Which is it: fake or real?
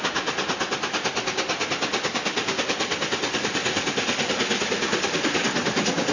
real